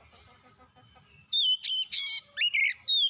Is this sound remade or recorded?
recorded